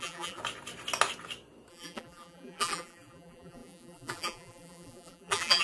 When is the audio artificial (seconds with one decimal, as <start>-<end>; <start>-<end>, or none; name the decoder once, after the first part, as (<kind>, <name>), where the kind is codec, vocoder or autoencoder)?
0.0-0.4 (vocoder, BigVGAN v2); 1.7-5.6